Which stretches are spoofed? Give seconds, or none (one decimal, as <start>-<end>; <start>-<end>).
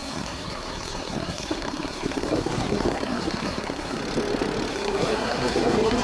0.0-4.0; 4.7-6.0